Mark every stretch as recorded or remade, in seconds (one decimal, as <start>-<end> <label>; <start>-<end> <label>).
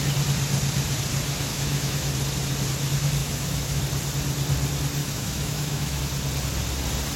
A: 0.0-1.5 recorded; 1.5-2.1 remade; 2.1-3.2 recorded; 3.2-3.8 remade; 3.8-5.0 recorded; 5.0-6.0 remade; 6.0-7.2 recorded